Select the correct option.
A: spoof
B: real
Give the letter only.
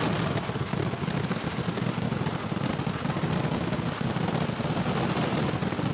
B